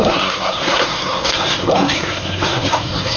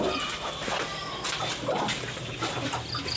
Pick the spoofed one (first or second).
first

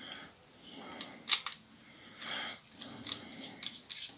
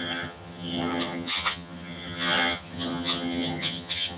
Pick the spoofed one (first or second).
second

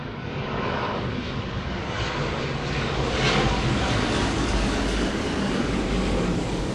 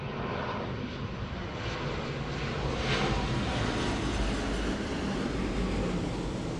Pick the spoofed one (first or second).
first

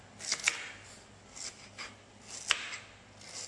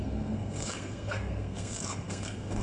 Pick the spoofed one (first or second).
second